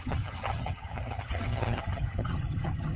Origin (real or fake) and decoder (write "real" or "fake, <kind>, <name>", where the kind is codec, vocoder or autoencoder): fake, vocoder, HiFi-GAN